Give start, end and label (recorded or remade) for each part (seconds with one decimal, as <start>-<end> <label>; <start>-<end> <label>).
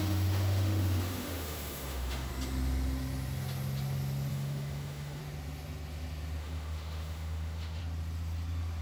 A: 0.0-2.3 remade; 2.3-4.3 recorded; 4.3-5.2 remade; 5.2-6.4 recorded; 6.4-7.8 remade; 7.8-8.8 recorded